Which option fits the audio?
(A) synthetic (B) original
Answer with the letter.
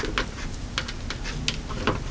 B